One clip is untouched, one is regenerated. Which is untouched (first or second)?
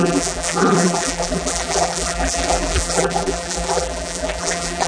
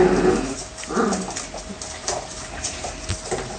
second